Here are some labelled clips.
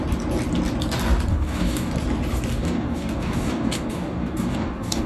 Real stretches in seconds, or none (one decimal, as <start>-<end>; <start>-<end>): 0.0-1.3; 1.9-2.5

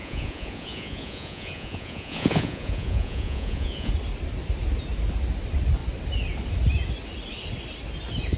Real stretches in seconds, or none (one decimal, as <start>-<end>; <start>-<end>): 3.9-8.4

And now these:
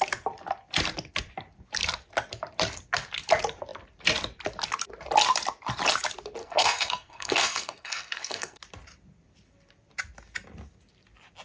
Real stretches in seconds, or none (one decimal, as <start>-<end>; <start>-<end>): 0.0-6.4; 8.6-11.4

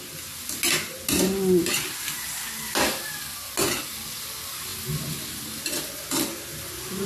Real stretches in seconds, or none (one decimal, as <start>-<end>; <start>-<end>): 0.0-7.1

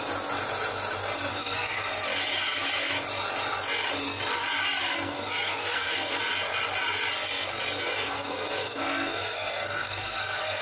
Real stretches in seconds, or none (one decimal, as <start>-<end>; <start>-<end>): 0.0-1.3; 1.9-4.8; 6.2-7.9

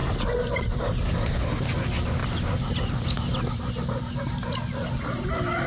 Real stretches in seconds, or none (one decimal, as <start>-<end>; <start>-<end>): 0.0-5.7

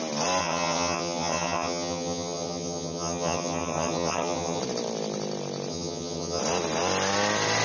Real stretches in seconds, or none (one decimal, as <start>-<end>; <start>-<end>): 0.0-0.4; 4.6-5.7; 6.4-7.6